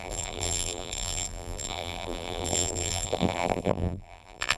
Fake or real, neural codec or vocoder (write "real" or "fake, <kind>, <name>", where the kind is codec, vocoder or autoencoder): fake, vocoder, BigVGAN v2